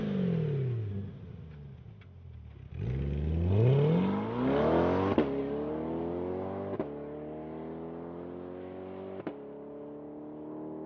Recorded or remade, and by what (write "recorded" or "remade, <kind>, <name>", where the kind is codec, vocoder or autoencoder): recorded